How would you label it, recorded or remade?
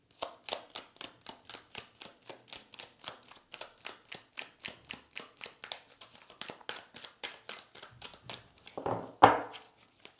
recorded